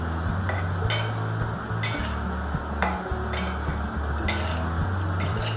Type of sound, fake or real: real